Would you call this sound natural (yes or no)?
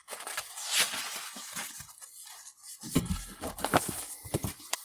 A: yes